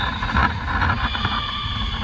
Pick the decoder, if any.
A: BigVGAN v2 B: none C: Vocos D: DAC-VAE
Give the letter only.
C